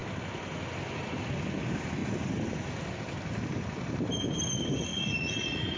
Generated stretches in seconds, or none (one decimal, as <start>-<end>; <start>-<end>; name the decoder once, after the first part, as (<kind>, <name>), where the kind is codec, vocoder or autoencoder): 4.9-5.8 (vocoder, Vocos)